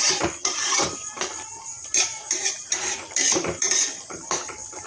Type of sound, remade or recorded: remade